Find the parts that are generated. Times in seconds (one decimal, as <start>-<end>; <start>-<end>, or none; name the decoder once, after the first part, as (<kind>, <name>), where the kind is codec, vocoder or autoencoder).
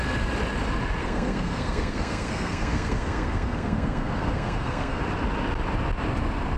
1.0-5.0 (codec, SNAC)